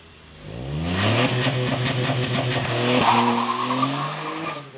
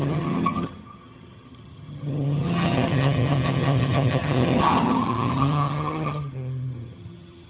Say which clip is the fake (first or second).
second